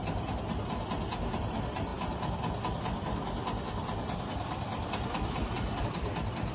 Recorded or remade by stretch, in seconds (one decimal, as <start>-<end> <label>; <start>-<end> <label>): 0.0-6.5 recorded